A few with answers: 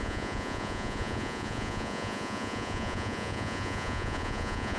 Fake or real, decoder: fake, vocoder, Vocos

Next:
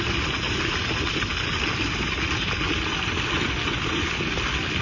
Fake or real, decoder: real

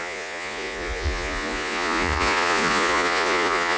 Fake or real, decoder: fake, vocoder, Vocos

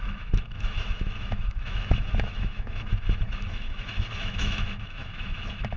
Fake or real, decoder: fake, autoencoder, DAC-VAE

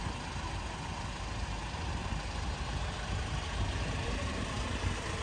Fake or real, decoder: real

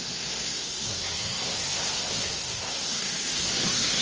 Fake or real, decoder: fake, codec, SNAC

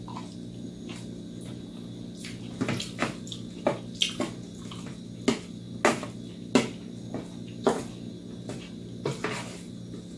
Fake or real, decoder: real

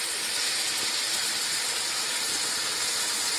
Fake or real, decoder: real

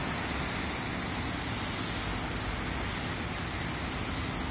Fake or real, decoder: real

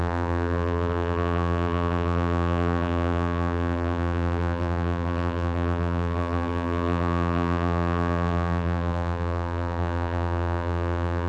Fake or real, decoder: fake, vocoder, BigVGAN v2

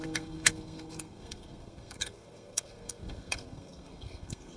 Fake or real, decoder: fake, codec, SNAC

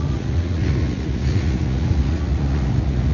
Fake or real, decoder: fake, vocoder, Vocos